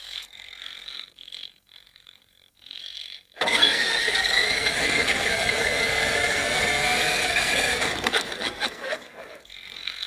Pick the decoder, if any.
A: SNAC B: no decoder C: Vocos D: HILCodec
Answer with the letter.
A